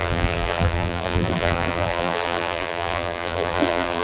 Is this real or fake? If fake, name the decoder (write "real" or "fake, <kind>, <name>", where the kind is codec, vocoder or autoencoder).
fake, vocoder, BigVGAN v2